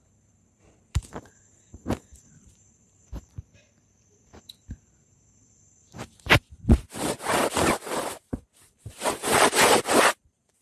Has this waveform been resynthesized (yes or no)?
yes